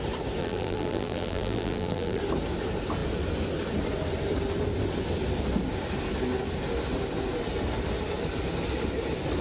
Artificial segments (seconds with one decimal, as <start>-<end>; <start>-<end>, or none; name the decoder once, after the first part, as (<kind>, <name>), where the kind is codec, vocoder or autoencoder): 0.4-2.2 (vocoder, BigVGAN v2)